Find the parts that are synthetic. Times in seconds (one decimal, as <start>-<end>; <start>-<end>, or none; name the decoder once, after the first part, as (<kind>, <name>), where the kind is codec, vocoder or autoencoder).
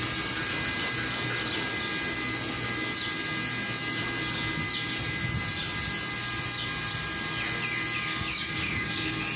8.3-8.9 (codec, DAC)